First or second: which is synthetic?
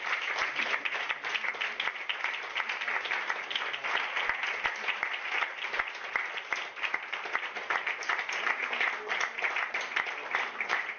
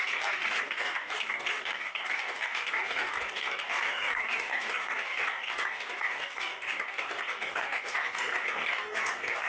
second